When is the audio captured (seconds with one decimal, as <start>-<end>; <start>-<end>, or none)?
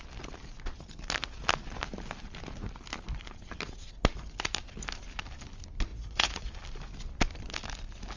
0.0-5.9; 6.5-8.2